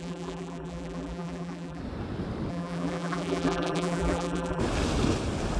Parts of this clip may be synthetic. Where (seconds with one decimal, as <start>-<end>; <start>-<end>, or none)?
0.0-1.8; 2.5-4.6